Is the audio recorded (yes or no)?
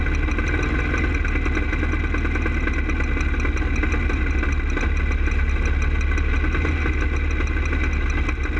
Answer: yes